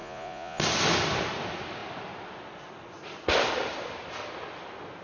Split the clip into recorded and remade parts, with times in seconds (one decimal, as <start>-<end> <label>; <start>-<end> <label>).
0.0-0.6 remade; 0.6-5.0 recorded